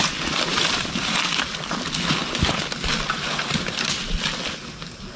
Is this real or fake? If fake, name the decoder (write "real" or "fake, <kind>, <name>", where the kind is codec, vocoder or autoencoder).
real